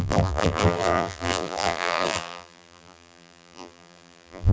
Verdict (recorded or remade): remade